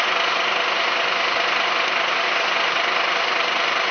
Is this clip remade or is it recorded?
recorded